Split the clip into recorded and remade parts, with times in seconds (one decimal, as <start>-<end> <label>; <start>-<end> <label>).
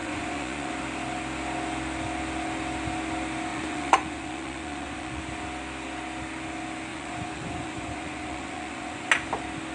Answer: 0.0-0.7 remade; 0.7-3.5 recorded; 3.5-5.2 remade; 5.2-6.9 recorded; 6.9-9.1 remade; 9.1-9.7 recorded